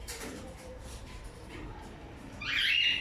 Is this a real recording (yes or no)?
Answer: no